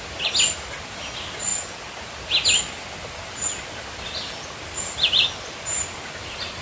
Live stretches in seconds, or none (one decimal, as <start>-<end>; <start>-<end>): 0.0-6.6